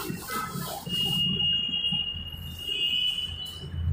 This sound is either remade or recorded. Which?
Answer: recorded